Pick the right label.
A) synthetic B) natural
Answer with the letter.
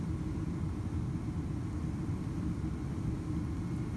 B